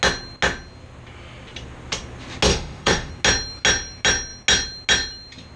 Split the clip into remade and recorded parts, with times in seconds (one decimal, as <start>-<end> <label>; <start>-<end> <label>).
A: 0.0-2.5 recorded; 2.5-3.1 remade; 3.1-5.6 recorded